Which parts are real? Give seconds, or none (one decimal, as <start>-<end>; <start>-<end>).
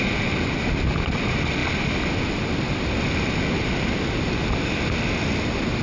0.0-5.8